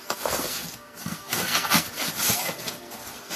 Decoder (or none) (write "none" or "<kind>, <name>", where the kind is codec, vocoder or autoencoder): codec, SNAC